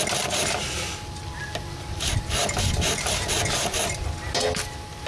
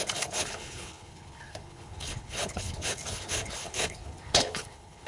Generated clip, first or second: second